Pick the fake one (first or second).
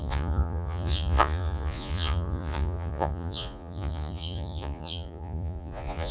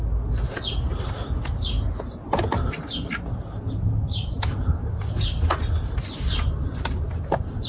first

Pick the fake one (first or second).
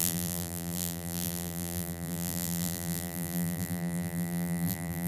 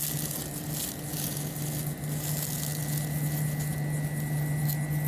first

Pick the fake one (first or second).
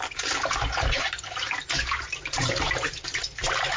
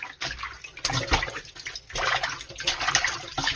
first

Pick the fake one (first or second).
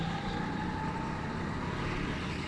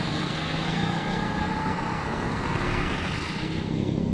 second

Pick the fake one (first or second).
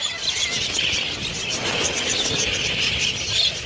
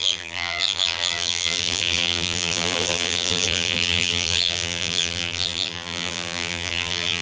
second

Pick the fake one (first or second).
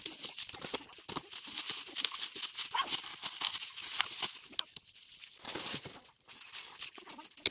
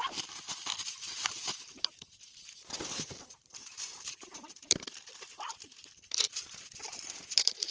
second